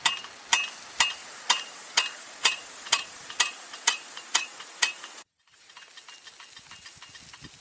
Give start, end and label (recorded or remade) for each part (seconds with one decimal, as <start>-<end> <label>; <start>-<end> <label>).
0.0-1.2 recorded; 1.2-5.7 remade; 5.7-7.6 recorded